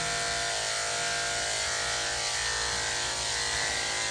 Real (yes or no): yes